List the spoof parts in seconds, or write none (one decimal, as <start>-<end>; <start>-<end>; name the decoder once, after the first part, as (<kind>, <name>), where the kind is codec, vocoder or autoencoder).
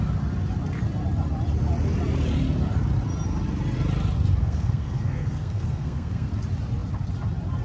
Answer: 4.4-6.3 (codec, SNAC)